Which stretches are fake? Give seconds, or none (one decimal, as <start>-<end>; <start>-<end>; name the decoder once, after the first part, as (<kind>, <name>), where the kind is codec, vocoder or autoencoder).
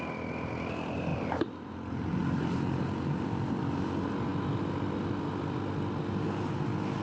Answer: 1.1-1.7 (vocoder, BigVGAN v2)